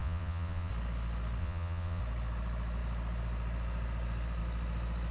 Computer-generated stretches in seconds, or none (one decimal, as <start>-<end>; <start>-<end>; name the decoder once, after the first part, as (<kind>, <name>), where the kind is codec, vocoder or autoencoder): 0.0-0.7 (vocoder, Vocos); 1.4-2.0